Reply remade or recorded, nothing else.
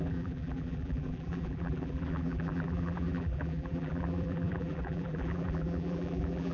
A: remade